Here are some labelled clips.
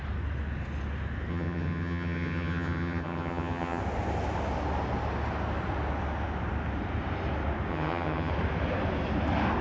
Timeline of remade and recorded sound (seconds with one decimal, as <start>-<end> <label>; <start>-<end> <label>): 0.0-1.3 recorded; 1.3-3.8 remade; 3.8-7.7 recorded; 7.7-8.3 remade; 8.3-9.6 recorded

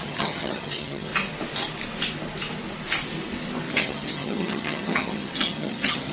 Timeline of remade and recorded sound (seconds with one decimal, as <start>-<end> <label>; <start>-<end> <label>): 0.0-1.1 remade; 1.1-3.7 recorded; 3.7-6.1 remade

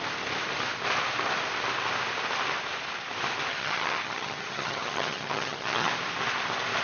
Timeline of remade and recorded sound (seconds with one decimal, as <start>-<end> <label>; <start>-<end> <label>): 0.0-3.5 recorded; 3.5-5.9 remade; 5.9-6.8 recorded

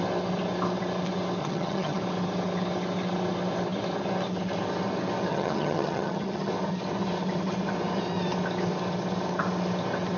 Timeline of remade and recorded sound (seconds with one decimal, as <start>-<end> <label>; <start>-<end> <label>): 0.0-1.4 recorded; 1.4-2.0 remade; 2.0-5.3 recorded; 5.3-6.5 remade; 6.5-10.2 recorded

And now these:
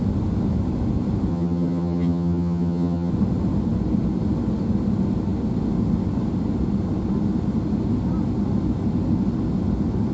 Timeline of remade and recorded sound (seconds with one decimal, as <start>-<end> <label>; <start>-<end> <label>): 0.0-1.3 recorded; 1.3-3.1 remade; 3.1-10.1 recorded